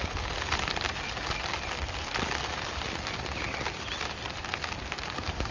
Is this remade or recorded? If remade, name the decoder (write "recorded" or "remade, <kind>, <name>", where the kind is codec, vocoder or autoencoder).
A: recorded